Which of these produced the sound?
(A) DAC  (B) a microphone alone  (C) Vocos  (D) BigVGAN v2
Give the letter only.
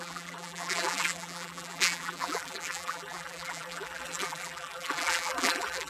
D